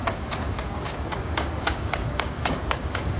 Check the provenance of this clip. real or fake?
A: fake